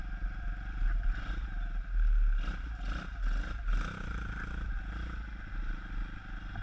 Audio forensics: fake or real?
real